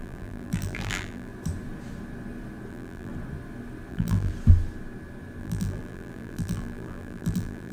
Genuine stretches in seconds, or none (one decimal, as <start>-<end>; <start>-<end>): 1.3-2.7; 3.1-3.9; 4.3-5.4